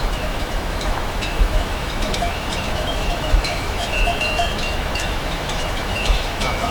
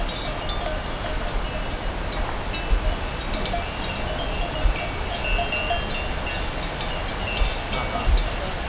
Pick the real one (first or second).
second